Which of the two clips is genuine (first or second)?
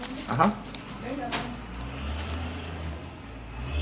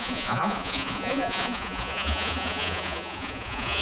first